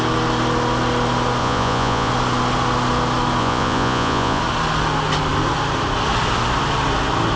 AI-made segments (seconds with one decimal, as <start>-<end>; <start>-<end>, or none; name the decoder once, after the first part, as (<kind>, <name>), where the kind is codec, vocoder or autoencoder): 1.4-2.1 (vocoder, Vocos); 3.4-4.4